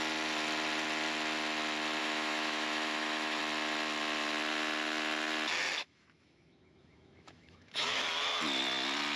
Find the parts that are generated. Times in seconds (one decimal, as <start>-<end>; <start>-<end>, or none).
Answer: 2.0-3.4; 5.8-8.0

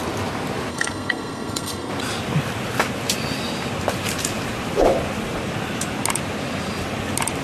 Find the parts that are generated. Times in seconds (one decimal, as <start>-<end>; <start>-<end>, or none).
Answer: 0.7-1.9